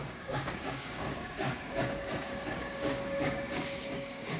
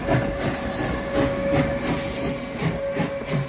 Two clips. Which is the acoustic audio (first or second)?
second